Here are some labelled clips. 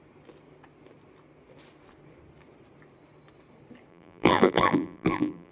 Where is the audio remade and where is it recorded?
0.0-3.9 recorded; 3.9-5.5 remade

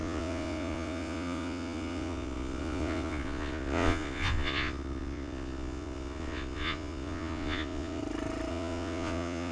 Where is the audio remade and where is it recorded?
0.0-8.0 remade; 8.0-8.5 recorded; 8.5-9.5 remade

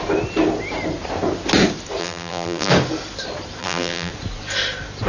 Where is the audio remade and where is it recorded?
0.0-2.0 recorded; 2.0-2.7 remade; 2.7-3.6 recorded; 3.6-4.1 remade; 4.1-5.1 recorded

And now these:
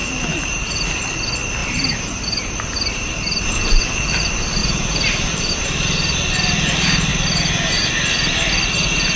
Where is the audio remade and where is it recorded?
0.0-0.9 remade; 0.9-1.6 recorded; 1.6-4.1 remade; 4.1-4.6 recorded; 4.6-5.5 remade; 5.5-9.2 recorded

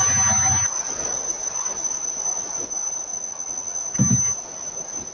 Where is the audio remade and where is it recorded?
0.0-3.1 recorded; 3.1-3.8 remade; 3.8-5.1 recorded

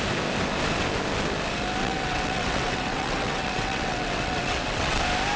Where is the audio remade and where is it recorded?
0.0-1.8 recorded; 1.8-5.0 remade; 5.0-5.4 recorded

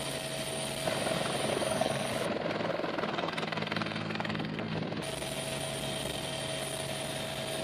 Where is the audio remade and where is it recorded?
0.0-1.5 recorded; 1.5-2.1 remade; 2.1-3.1 recorded; 3.1-4.7 remade; 4.7-7.6 recorded